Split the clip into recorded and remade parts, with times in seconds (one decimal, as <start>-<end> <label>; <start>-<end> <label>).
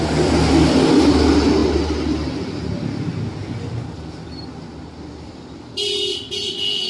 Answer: 0.0-6.9 recorded